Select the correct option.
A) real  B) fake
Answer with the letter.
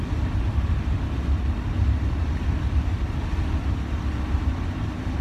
A